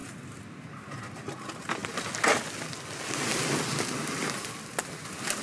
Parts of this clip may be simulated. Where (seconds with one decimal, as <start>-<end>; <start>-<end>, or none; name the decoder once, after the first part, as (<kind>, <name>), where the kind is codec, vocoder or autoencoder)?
none